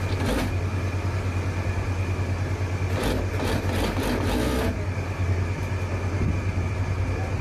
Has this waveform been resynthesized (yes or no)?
no